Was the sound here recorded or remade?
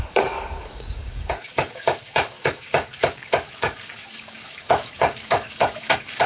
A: remade